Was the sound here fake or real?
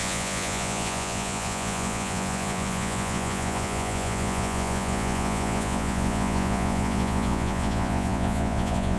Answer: fake